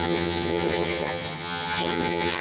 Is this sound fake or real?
fake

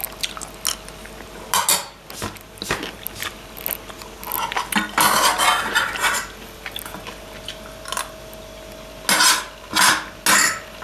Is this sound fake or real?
real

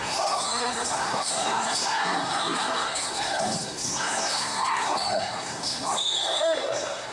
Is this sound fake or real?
fake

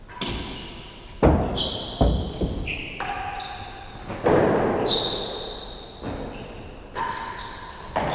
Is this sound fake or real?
real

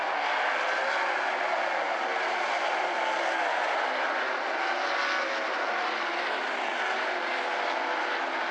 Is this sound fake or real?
real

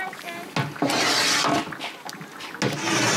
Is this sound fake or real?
real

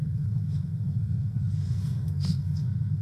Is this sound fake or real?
fake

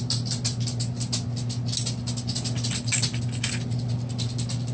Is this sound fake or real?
real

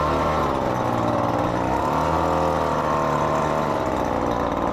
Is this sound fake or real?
real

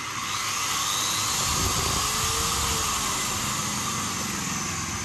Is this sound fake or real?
real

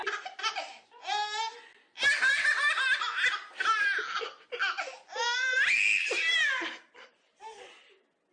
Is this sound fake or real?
real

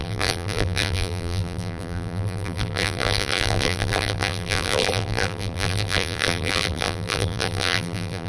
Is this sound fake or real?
fake